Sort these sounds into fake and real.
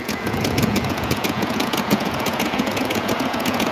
fake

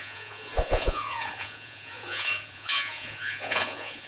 fake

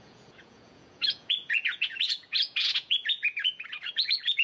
fake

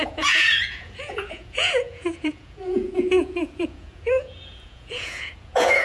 fake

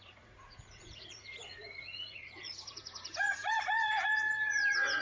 fake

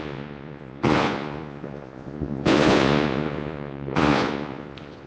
fake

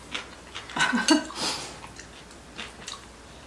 real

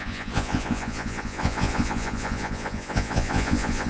fake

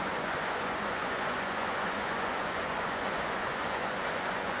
fake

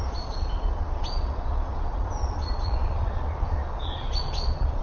fake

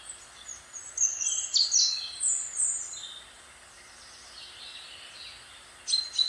real